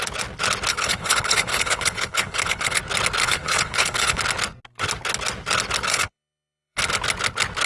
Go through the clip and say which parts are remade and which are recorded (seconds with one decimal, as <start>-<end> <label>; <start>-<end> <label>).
0.0-0.7 recorded; 0.7-2.8 remade; 2.8-3.2 recorded; 3.2-4.2 remade; 4.2-5.9 recorded; 5.9-6.8 remade; 6.8-7.7 recorded